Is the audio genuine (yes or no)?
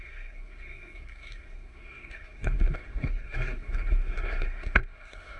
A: no